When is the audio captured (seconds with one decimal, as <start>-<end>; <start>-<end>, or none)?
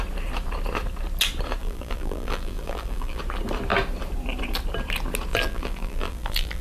0.0-1.6; 3.2-5.3